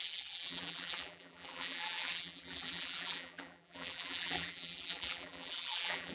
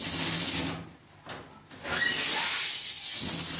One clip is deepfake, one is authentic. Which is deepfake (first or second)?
first